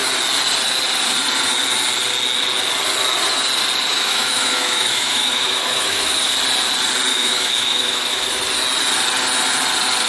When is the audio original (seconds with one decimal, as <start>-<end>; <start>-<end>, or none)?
0.0-3.9; 6.3-7.1; 8.2-10.1